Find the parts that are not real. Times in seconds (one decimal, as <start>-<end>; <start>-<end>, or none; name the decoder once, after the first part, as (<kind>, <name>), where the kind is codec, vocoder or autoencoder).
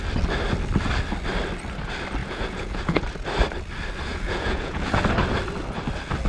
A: 2.2-3.0 (vocoder, Vocos); 4.1-4.9